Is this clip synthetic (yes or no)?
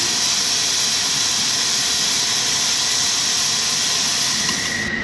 no